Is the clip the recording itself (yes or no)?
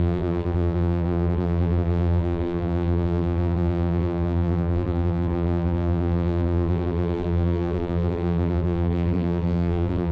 no